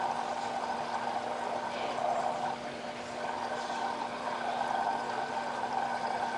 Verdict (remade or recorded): recorded